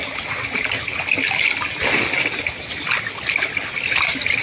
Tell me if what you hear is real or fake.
real